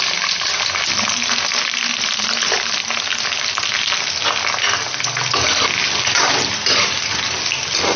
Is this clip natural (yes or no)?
yes